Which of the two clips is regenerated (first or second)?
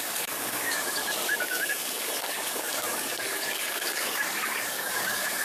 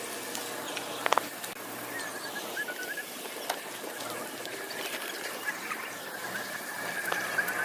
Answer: first